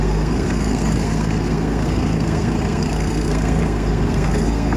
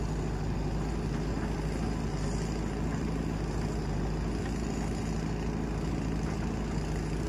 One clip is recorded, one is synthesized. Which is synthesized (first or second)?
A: first